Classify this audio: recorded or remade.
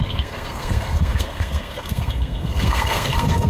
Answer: remade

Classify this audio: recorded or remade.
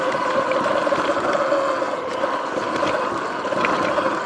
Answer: recorded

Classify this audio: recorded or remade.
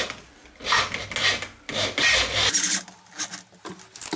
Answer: recorded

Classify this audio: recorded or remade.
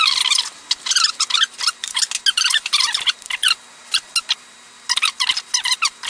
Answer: recorded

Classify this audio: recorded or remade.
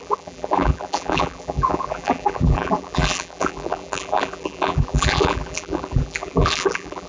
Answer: remade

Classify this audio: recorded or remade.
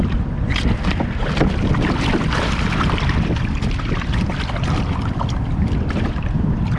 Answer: remade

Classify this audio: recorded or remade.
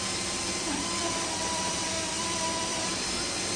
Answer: remade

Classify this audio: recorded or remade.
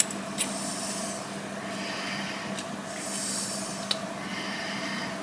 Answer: recorded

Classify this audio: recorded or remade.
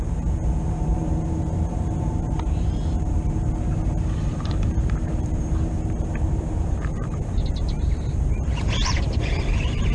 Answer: remade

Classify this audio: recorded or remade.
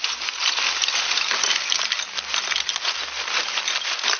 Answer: recorded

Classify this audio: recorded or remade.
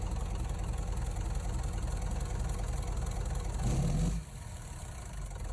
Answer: recorded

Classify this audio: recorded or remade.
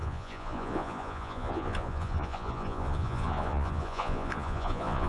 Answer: remade